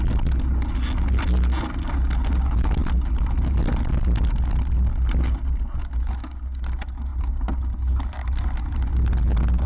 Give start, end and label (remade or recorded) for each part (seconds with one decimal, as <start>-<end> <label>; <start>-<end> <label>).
0.0-9.7 recorded